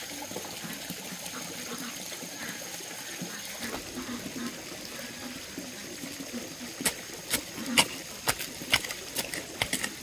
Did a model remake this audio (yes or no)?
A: no